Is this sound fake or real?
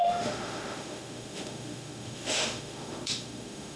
fake